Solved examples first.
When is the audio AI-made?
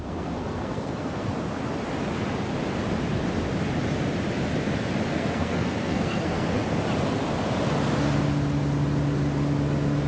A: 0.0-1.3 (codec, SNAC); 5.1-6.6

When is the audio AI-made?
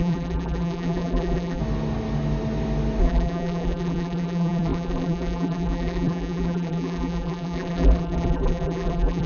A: 0.0-1.6 (vocoder, BigVGAN v2); 3.0-9.3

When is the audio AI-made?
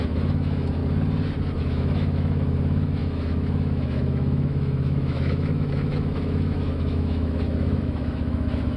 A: 0.0-0.8 (autoencoder, DAC-VAE); 1.6-8.8